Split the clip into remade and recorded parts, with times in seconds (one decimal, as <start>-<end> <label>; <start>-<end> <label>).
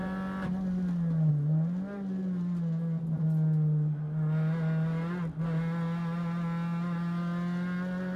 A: 0.0-8.2 recorded